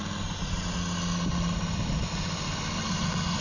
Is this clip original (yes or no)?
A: yes